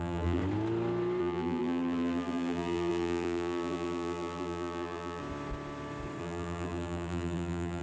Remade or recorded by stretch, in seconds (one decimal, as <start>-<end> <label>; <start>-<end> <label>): 0.0-0.4 remade; 0.4-1.2 recorded; 1.2-5.2 remade; 5.2-6.2 recorded; 6.2-7.8 remade